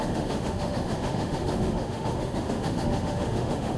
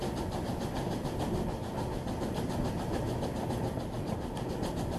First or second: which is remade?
first